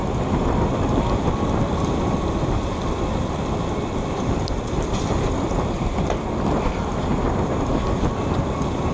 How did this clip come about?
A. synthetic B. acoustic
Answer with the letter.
A